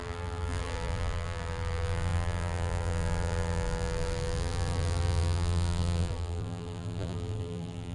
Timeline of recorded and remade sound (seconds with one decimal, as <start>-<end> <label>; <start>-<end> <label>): 0.0-7.9 remade